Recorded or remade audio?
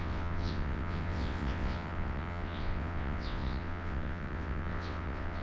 remade